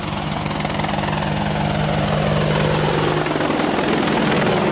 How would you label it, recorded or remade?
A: recorded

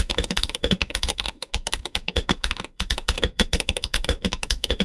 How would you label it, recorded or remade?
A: remade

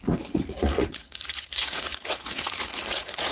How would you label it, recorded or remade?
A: remade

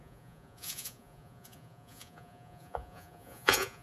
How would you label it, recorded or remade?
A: remade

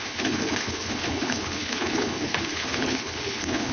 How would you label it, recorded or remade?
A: remade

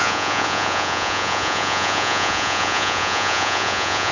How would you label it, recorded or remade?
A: remade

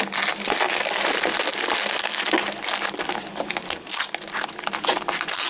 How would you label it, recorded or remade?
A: recorded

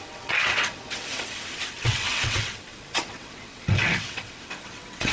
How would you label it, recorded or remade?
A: remade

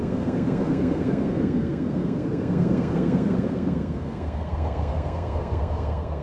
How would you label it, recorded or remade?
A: remade